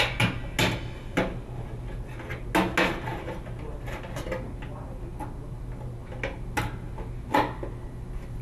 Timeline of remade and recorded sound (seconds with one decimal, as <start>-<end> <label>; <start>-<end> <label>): 0.0-8.4 recorded